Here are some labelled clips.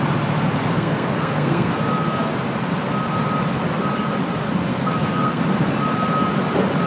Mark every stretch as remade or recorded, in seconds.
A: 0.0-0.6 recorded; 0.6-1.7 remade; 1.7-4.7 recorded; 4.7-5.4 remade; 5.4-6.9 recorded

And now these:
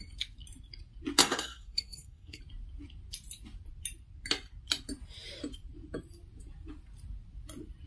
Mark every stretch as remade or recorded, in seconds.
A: 0.0-1.2 recorded; 1.2-2.4 remade; 2.4-7.9 recorded

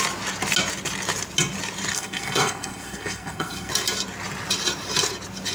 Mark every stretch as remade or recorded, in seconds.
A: 0.0-1.9 recorded; 1.9-3.7 remade; 3.7-5.5 recorded

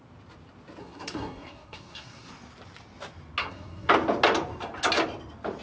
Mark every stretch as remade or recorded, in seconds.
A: 0.0-0.8 recorded; 0.8-2.3 remade; 2.3-3.4 recorded; 3.4-3.9 remade; 3.9-5.6 recorded

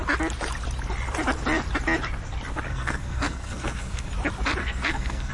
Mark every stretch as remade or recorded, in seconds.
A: 0.0-2.7 recorded; 2.7-4.1 remade; 4.1-4.6 recorded; 4.6-5.3 remade

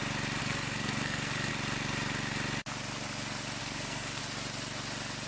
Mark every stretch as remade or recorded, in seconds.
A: 0.0-0.4 recorded; 0.4-1.5 remade; 1.5-3.6 recorded; 3.6-4.2 remade; 4.2-5.3 recorded